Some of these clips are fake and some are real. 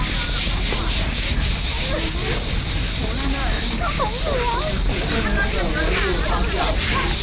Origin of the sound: real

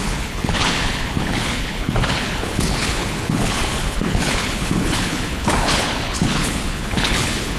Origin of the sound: fake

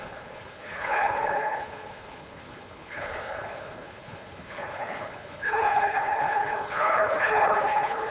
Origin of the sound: fake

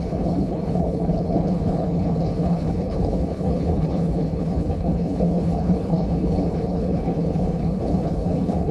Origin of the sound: fake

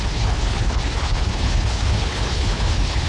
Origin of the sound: fake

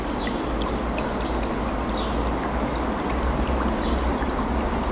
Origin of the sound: real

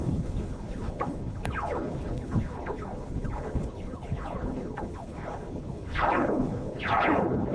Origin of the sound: fake